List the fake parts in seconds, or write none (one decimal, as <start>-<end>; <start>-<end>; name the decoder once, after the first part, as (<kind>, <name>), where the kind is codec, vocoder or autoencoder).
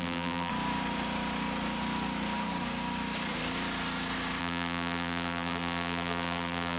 0.0-0.5 (vocoder, BigVGAN v2); 4.4-6.8